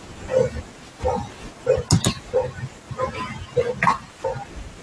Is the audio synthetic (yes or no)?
no